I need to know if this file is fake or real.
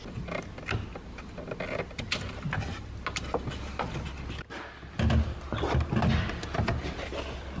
real